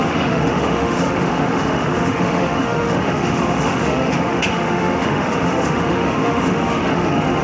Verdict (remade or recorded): remade